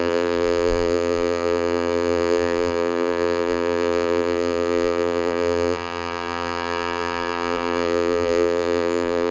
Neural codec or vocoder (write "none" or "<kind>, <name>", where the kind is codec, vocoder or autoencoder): vocoder, BigVGAN v2